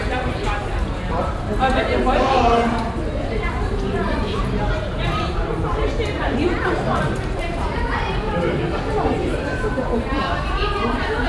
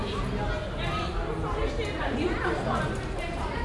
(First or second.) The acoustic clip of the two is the second